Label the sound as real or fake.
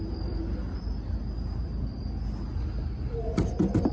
real